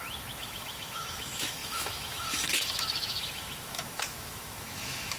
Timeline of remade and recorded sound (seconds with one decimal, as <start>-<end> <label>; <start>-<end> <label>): 0.0-5.2 remade